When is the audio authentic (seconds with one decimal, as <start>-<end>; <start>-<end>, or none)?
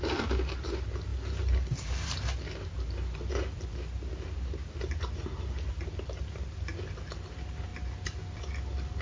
0.0-9.0